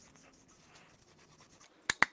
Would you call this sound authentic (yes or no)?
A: yes